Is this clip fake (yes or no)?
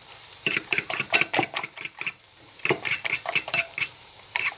yes